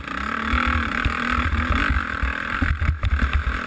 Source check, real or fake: real